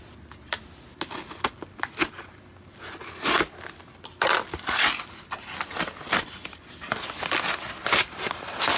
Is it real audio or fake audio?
real